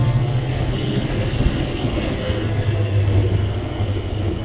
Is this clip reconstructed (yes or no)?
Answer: yes